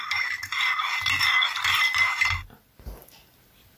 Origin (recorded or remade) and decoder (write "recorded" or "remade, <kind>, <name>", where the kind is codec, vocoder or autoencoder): recorded